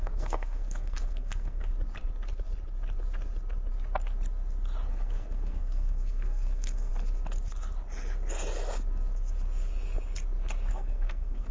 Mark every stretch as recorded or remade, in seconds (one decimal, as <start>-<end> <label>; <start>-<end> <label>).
0.0-1.7 remade; 1.7-4.9 recorded; 4.9-6.9 remade; 6.9-10.7 recorded; 10.7-11.5 remade